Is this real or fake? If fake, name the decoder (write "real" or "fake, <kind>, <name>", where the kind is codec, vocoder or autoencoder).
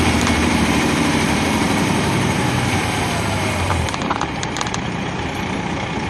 fake, vocoder, BigVGAN v2